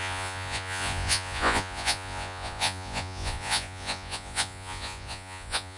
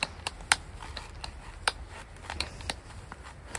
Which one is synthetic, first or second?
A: first